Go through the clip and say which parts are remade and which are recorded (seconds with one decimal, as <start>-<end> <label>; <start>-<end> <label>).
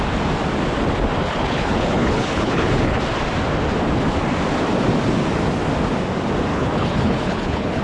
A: 0.0-1.2 recorded; 1.2-3.0 remade; 3.0-6.5 recorded; 6.5-7.8 remade